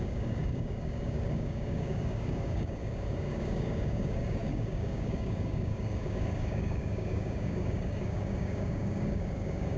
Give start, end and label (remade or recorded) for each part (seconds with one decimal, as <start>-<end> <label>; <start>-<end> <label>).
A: 0.0-9.8 remade